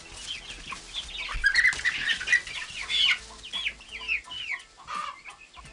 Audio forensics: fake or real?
real